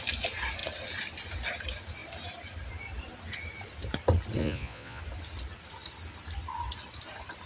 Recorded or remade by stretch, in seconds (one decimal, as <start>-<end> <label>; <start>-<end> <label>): 0.0-4.4 recorded; 4.4-5.0 remade; 5.0-7.5 recorded